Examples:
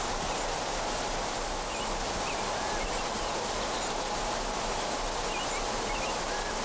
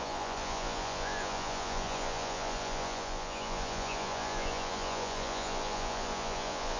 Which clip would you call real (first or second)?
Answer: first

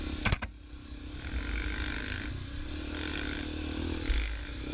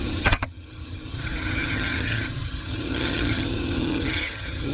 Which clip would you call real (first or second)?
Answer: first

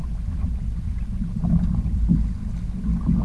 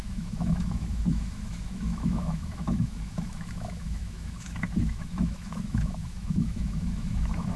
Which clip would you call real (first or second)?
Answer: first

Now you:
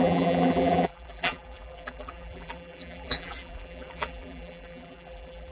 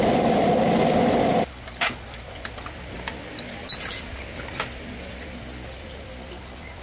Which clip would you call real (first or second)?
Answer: second